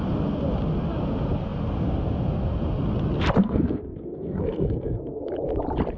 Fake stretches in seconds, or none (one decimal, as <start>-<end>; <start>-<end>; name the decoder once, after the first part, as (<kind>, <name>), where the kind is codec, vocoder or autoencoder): 3.4-5.2 (codec, SNAC)